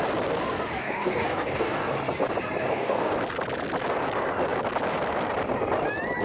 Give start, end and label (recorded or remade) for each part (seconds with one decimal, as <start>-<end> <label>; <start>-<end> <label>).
0.0-0.8 recorded; 0.8-1.9 remade; 1.9-2.6 recorded; 2.6-3.1 remade; 3.1-6.2 recorded